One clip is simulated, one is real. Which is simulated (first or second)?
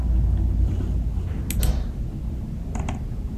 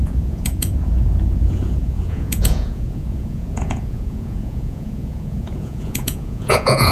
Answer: second